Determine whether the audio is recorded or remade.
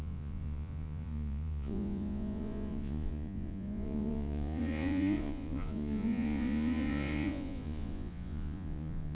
remade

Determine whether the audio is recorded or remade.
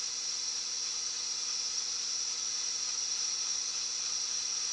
recorded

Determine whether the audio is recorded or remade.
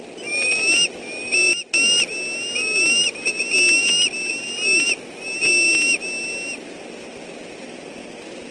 recorded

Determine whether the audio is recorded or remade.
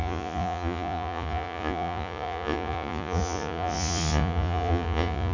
remade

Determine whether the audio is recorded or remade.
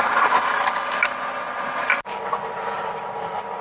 recorded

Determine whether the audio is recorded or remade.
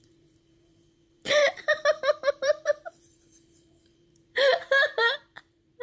remade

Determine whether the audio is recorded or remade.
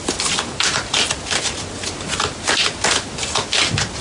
recorded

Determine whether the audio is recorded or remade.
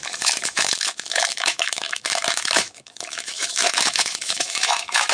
remade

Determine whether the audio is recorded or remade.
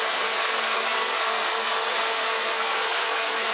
remade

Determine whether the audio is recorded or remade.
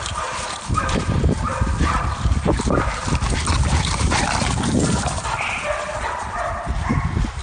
remade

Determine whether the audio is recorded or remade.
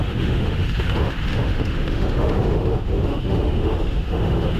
remade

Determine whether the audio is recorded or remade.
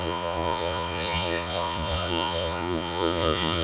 remade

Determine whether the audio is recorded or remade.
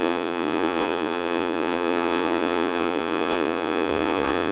remade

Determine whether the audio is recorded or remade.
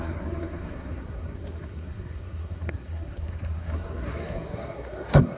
remade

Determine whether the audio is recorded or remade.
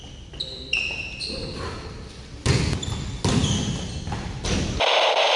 recorded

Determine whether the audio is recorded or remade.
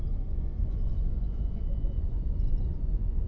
remade